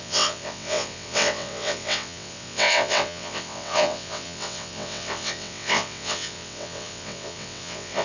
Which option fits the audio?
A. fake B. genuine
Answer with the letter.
A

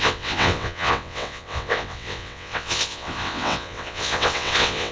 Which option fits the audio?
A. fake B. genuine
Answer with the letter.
A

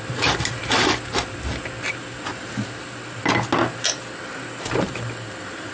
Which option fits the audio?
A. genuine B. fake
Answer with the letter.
A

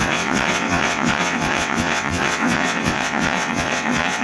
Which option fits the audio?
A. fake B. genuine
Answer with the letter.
A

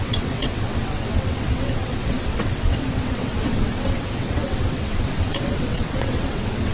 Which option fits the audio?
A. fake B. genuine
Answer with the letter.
A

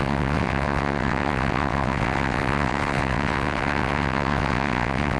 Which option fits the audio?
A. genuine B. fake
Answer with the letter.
B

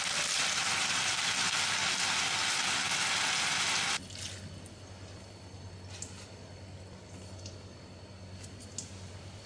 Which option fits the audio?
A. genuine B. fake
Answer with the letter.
A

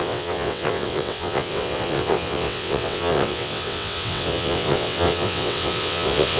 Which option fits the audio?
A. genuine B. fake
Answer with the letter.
B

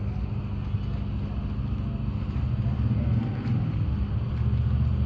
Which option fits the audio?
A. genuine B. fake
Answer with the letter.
A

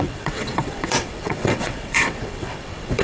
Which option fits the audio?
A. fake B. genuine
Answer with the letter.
A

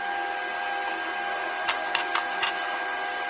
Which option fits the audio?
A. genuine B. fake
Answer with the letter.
A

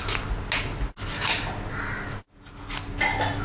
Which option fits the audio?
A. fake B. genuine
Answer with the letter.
B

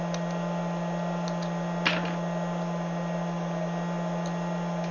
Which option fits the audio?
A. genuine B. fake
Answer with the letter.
A